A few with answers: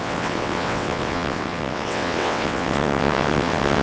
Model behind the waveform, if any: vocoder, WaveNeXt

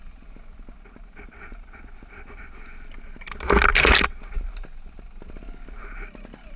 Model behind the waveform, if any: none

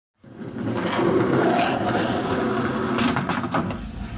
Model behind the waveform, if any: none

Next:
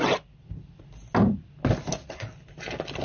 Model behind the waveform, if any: none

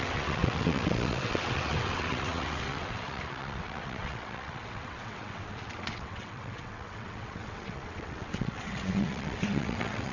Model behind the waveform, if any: vocoder, WaveNeXt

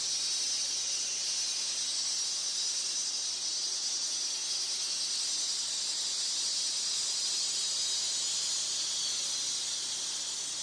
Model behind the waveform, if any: none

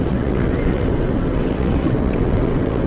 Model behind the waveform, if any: vocoder, WaveNeXt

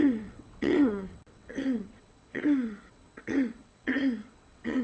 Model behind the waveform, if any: vocoder, WaveNeXt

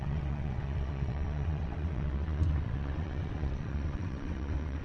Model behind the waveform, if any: vocoder, WaveNeXt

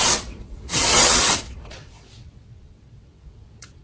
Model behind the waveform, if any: vocoder, WaveNeXt